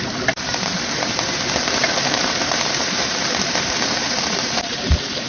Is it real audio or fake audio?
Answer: fake